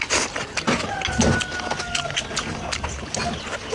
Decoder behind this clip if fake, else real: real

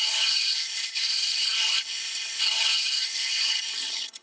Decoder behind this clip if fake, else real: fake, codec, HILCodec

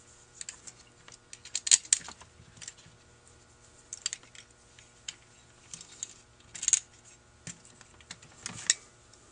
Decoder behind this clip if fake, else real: real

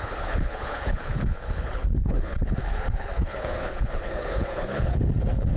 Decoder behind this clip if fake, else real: fake, codec, HILCodec